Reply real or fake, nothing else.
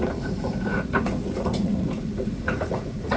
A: fake